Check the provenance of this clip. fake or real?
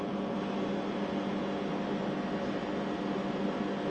real